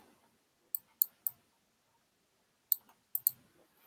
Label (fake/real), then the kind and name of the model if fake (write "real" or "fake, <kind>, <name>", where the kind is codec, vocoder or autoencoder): real